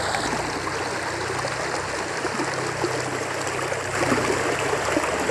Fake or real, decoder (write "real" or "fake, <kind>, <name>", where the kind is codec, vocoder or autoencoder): real